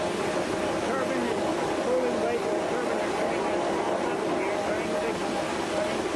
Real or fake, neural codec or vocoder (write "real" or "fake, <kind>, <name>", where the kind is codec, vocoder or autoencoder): real